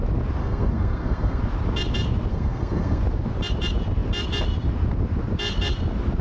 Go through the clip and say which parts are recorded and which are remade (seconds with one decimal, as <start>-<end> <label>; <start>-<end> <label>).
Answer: 0.0-0.4 recorded; 0.4-1.4 remade; 1.4-2.3 recorded; 2.3-3.0 remade; 3.0-6.2 recorded